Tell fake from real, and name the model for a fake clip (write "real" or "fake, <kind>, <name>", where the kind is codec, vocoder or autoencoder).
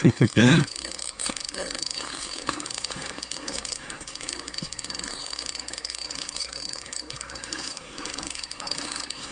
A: fake, codec, SNAC